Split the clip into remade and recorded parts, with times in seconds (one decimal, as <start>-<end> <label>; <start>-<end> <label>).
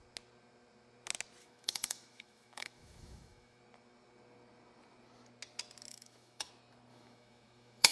0.0-1.4 recorded; 1.4-3.6 remade; 3.6-5.9 recorded; 5.9-6.5 remade; 6.5-6.9 recorded; 6.9-7.9 remade